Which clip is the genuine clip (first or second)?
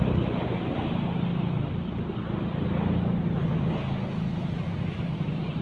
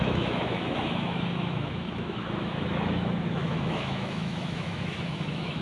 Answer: first